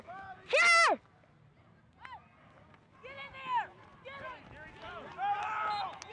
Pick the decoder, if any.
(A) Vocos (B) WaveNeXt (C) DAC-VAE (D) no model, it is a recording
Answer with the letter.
D